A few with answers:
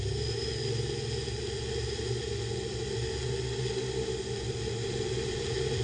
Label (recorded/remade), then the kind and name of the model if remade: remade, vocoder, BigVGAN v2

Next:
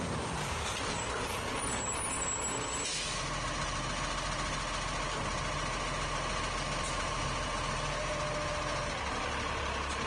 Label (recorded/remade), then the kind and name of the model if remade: recorded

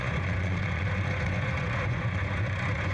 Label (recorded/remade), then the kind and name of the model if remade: remade, vocoder, Vocos